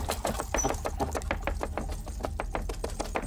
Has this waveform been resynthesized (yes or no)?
no